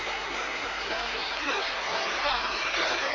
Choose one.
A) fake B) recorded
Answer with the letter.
A